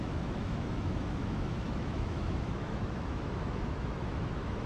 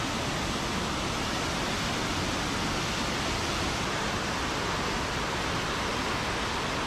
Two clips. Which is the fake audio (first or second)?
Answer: first